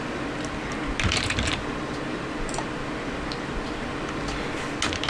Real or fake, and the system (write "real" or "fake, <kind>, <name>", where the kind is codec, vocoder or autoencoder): real